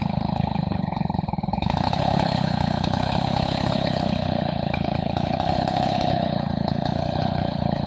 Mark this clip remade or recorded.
remade